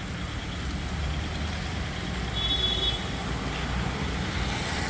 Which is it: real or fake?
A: real